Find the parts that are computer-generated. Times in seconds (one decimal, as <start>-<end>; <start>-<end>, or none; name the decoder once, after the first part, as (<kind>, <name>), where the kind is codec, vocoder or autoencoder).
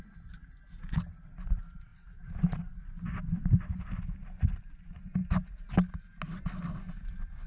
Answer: none